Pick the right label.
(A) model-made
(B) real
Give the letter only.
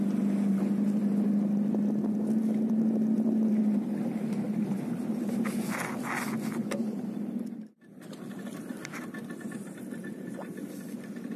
B